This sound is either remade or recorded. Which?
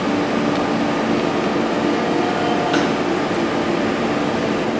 recorded